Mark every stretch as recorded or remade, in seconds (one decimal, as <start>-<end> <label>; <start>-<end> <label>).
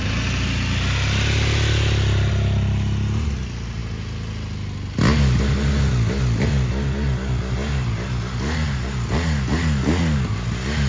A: 0.0-10.9 recorded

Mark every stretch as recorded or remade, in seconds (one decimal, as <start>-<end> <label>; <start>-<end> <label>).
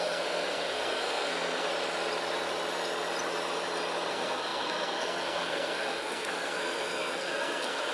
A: 0.0-1.7 remade; 1.7-4.1 recorded; 4.1-7.9 remade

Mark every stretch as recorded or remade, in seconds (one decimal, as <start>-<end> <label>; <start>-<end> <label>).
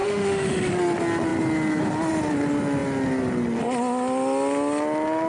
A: 0.0-0.7 remade; 0.7-5.3 recorded